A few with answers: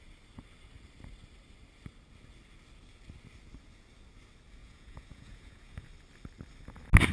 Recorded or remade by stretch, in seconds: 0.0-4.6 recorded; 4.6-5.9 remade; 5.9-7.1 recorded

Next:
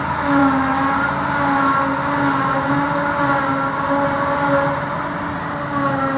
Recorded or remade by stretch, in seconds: 0.0-6.2 recorded